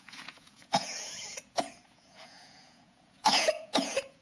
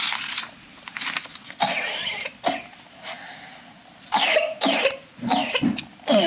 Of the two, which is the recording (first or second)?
second